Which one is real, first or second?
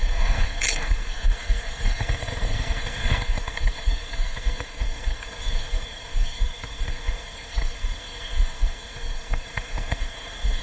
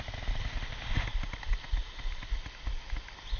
second